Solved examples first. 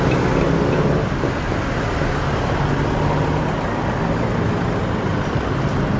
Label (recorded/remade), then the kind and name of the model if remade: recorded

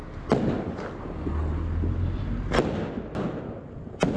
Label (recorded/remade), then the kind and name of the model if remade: recorded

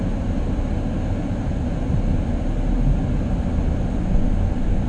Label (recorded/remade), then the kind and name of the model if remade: recorded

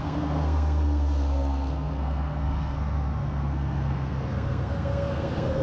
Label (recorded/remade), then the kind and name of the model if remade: remade, codec, SNAC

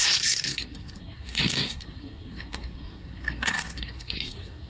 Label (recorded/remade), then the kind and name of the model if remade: remade, codec, SNAC